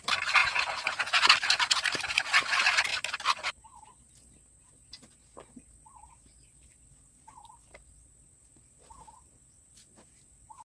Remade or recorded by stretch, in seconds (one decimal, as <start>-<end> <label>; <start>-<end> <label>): 0.0-0.4 recorded; 0.4-1.2 remade; 1.2-10.6 recorded